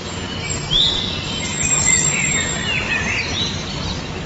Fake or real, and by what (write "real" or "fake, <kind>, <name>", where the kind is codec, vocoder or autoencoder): real